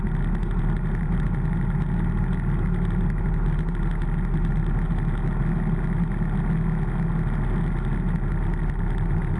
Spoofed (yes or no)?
no